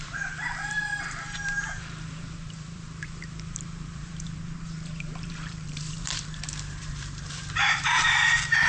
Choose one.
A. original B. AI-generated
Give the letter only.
B